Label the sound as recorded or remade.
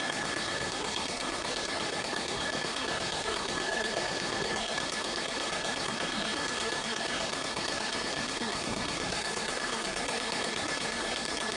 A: remade